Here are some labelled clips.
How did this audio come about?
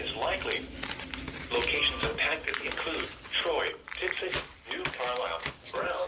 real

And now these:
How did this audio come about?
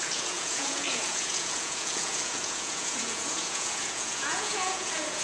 fake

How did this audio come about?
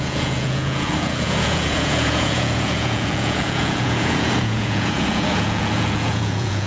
fake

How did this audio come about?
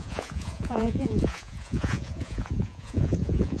fake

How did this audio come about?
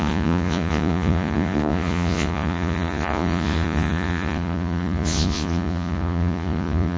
fake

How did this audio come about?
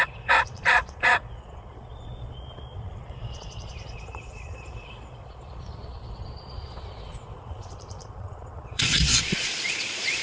fake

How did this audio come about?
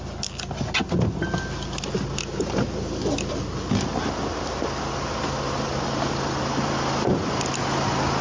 real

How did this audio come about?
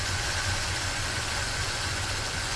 fake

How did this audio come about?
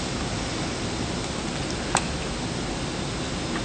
real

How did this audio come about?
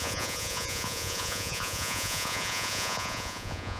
fake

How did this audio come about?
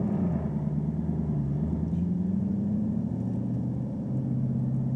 real